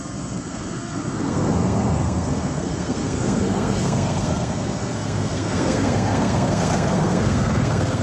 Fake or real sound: fake